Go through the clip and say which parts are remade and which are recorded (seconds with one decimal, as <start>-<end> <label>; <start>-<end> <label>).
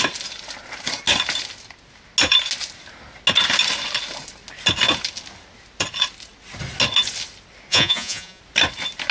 0.0-7.7 recorded; 7.7-8.4 remade; 8.4-9.1 recorded